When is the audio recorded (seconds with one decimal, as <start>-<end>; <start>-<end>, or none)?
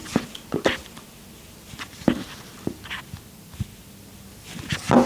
0.0-5.1